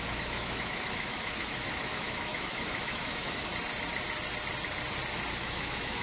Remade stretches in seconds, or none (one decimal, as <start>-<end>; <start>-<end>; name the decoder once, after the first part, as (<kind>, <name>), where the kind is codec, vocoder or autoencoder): 0.0-3.5 (autoencoder, DAC-VAE); 5.4-6.0